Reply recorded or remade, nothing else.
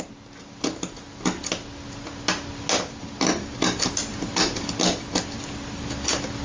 recorded